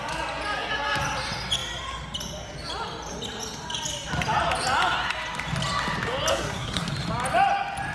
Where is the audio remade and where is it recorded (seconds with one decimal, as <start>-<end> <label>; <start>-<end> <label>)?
0.0-6.3 recorded; 6.3-6.9 remade; 6.9-7.9 recorded